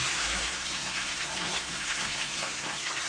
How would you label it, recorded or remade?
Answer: remade